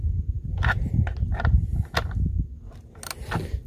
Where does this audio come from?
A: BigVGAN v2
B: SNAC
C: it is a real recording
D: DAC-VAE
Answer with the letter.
C